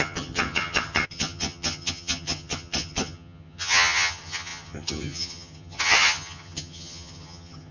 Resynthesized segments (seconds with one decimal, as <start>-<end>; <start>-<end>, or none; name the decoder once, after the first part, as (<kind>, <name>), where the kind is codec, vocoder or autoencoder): 0.0-7.7 (vocoder, HiFi-GAN)